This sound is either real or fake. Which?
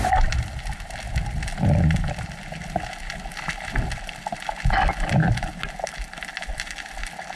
real